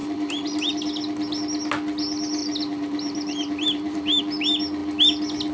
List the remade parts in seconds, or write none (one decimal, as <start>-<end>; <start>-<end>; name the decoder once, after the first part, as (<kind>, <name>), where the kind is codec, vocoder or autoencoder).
0.0-0.7 (vocoder, BigVGAN v2); 2.4-4.2